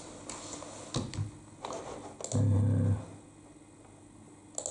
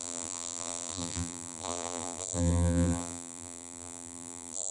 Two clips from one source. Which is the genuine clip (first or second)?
first